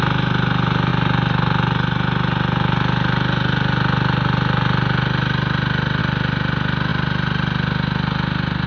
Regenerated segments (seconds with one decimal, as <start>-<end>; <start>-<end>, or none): none